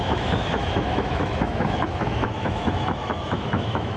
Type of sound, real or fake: fake